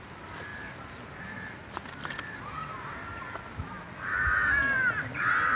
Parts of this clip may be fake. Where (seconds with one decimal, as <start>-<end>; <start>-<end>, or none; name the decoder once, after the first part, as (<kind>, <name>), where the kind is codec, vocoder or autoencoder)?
none